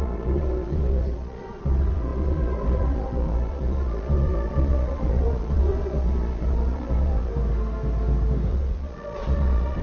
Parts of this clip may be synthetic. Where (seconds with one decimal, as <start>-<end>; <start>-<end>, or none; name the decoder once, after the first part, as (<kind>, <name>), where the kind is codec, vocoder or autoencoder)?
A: 0.0-7.3 (vocoder, Vocos); 8.5-9.8